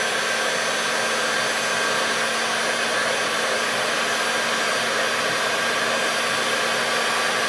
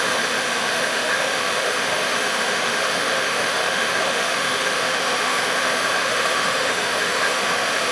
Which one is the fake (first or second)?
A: second